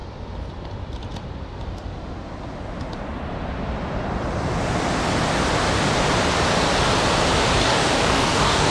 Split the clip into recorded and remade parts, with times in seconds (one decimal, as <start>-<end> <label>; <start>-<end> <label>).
0.0-7.6 recorded; 7.6-8.7 remade